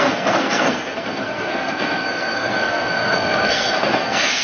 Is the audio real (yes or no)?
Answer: no